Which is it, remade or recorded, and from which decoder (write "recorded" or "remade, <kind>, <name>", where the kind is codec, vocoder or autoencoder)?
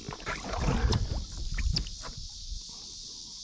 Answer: recorded